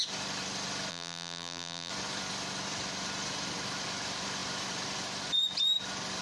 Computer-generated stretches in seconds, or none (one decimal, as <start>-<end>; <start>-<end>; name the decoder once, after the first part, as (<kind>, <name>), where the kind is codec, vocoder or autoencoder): 0.9-1.9 (vocoder, BigVGAN v2)